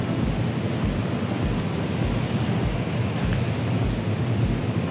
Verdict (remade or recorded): recorded